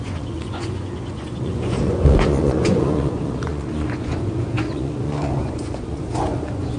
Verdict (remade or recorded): remade